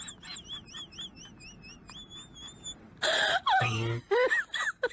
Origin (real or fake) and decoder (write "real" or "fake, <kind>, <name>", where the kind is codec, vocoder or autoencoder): real